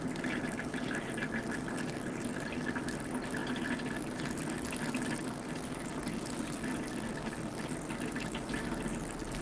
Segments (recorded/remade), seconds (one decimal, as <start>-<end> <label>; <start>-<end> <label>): 0.0-9.4 recorded